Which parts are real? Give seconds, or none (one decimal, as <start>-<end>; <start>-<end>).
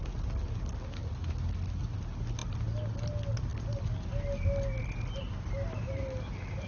0.0-6.7